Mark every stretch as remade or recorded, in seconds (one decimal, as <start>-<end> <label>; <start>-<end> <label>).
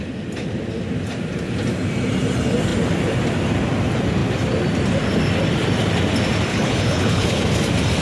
0.0-6.5 recorded; 6.5-7.4 remade; 7.4-8.0 recorded